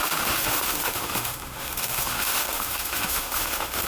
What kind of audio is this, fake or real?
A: fake